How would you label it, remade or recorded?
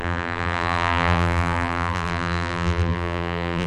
remade